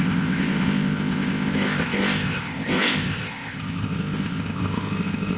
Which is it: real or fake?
fake